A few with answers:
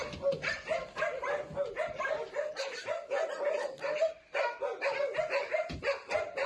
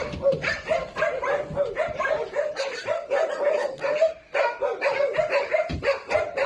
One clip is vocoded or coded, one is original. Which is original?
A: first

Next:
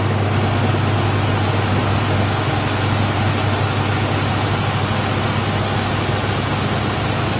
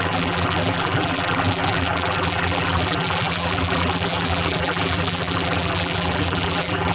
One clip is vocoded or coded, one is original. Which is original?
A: first